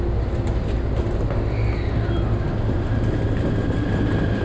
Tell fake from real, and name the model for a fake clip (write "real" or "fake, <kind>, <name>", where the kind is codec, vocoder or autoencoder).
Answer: real